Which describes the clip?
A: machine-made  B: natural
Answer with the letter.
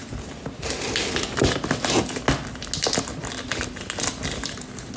B